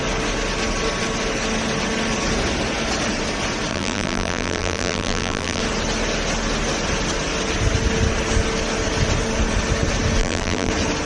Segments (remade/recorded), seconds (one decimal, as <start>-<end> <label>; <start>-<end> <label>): 0.0-3.7 recorded; 3.7-5.6 remade; 5.6-10.2 recorded; 10.2-10.7 remade; 10.7-11.1 recorded